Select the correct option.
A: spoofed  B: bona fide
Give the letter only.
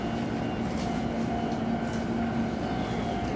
B